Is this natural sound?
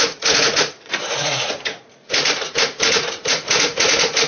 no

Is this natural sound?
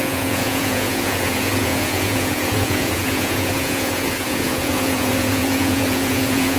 no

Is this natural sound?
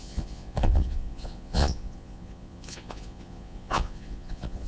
no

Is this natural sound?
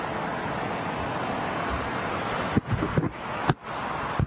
yes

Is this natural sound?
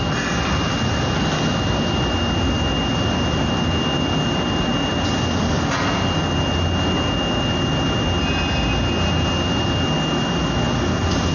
yes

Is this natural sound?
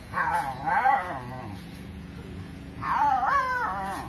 no